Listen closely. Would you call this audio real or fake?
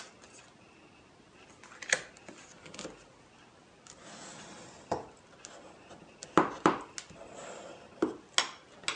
real